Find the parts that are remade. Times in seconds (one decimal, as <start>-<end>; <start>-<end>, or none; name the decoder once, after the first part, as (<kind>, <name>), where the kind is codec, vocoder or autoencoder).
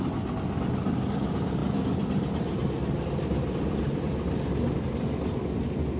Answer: none